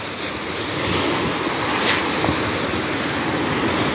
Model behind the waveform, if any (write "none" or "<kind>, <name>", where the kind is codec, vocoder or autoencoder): none